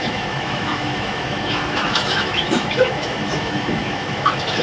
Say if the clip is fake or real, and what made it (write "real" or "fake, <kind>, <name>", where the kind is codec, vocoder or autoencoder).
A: fake, autoencoder, DAC-VAE